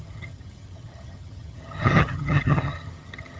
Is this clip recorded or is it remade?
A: remade